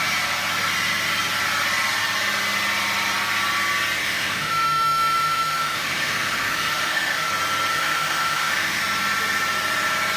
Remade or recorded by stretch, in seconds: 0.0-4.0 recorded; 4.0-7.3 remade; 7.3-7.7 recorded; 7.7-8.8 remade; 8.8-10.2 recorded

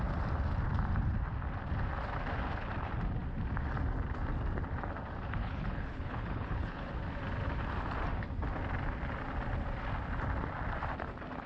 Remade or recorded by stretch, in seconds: 0.0-5.4 recorded; 5.4-6.9 remade; 6.9-11.5 recorded

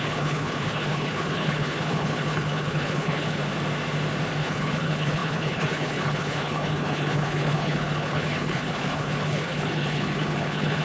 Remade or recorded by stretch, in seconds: 0.0-3.4 remade; 3.4-4.4 recorded; 4.4-10.8 remade

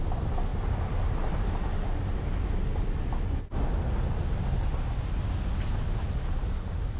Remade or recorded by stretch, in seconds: 0.0-7.0 recorded